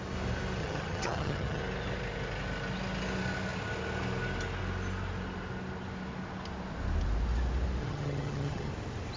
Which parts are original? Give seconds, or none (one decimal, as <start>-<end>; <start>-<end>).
0.0-0.6; 1.6-7.8; 8.7-9.2